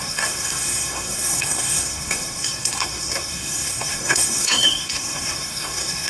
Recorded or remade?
remade